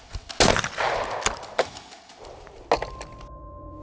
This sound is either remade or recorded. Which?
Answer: recorded